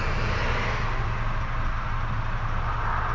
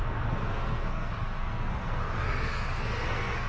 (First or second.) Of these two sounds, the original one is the first